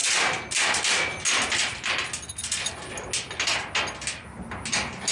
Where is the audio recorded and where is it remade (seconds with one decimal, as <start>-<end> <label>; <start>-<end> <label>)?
0.0-5.1 recorded